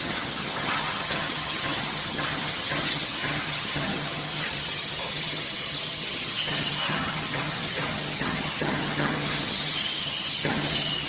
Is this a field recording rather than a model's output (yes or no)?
no